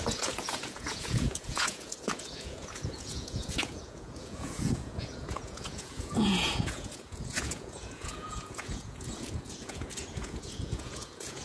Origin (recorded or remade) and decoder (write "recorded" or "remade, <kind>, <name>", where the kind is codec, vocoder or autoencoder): remade, vocoder, Vocos